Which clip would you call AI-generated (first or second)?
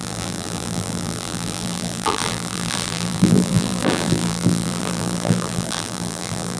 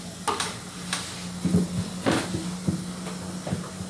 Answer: first